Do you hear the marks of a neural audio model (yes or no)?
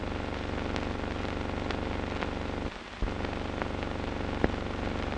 no